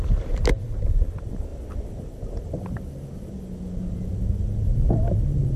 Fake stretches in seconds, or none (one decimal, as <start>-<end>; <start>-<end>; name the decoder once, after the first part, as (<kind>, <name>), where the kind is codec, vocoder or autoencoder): none